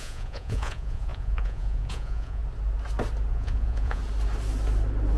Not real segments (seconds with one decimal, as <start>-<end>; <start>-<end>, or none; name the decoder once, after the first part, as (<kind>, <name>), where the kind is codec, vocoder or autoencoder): 0.0-2.4 (vocoder, Vocos); 3.3-4.0